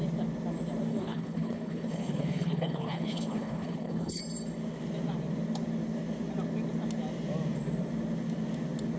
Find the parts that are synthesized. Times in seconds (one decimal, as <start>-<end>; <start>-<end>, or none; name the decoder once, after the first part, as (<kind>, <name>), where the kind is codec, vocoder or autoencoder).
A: 0.9-4.2 (codec, HILCodec)